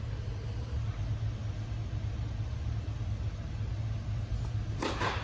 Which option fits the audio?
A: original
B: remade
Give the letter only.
A